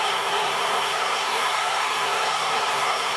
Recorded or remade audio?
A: remade